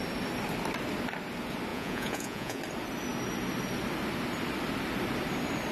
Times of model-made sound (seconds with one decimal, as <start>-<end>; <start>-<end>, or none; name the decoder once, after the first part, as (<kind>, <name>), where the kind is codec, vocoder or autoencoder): 1.7-2.6 (vocoder, Vocos)